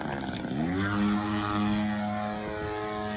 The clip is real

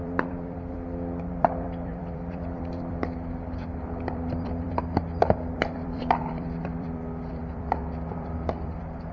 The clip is fake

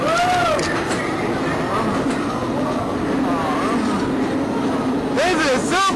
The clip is real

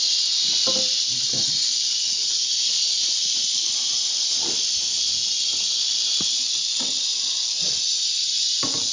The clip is fake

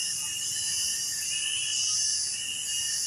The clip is real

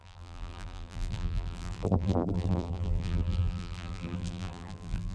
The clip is fake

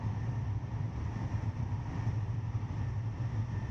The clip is fake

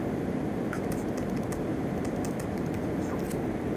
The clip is real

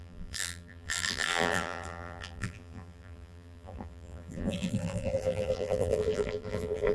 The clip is fake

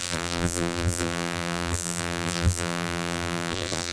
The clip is fake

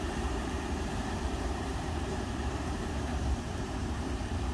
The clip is fake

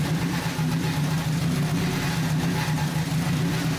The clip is real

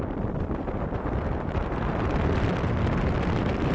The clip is fake